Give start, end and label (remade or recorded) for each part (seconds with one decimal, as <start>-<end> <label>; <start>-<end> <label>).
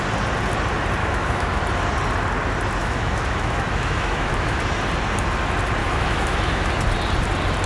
0.0-1.0 recorded; 1.0-1.6 remade; 1.6-2.8 recorded; 2.8-4.6 remade; 4.6-5.8 recorded; 5.8-6.7 remade; 6.7-7.7 recorded